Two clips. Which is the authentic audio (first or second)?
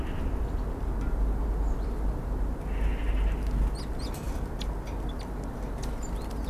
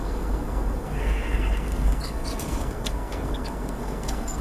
first